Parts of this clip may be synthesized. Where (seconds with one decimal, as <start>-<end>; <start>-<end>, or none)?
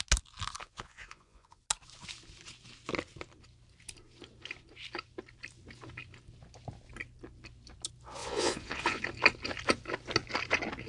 0.6-1.6; 8.2-9.0